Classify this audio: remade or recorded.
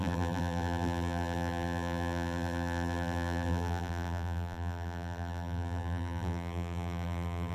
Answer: remade